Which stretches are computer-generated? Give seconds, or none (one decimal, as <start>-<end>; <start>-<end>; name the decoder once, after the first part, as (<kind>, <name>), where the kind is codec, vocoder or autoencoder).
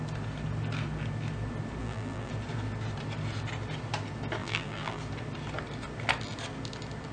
1.8-2.3 (vocoder, BigVGAN v2); 4.4-5.0